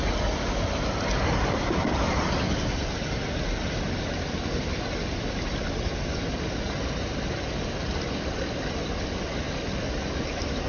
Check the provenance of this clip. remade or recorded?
recorded